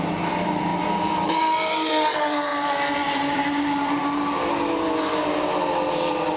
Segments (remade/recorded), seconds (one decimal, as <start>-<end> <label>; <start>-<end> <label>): 0.0-0.7 remade; 0.7-1.4 recorded; 1.4-4.0 remade; 4.0-6.4 recorded